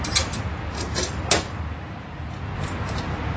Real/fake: real